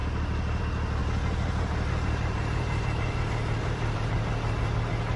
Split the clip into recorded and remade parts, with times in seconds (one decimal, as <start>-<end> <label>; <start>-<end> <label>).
0.0-1.0 recorded; 1.0-4.1 remade; 4.1-5.2 recorded

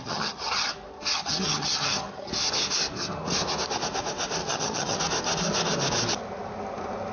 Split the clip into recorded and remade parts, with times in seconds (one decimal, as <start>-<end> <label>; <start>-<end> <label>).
0.0-0.7 remade; 0.7-1.1 recorded; 1.1-2.3 remade; 2.3-4.4 recorded; 4.4-5.0 remade; 5.0-7.1 recorded

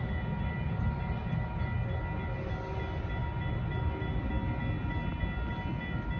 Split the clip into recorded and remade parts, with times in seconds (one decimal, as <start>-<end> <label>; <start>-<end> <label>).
0.0-6.2 recorded